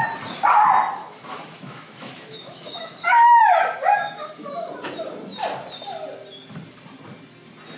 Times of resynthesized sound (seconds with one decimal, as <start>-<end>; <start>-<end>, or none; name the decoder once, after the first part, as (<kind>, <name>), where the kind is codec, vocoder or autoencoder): 1.0-4.7 (autoencoder, DAC-VAE)